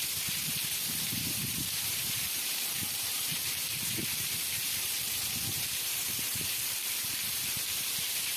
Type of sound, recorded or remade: remade